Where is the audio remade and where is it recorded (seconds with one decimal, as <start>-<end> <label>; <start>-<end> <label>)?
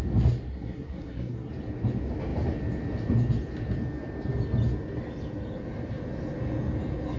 0.0-0.5 recorded; 0.5-1.5 remade; 1.5-7.2 recorded